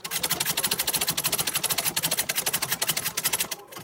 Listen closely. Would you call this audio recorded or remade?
recorded